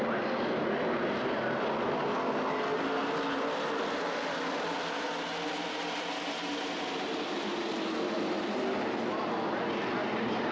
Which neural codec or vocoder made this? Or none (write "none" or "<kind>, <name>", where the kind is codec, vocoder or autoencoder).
none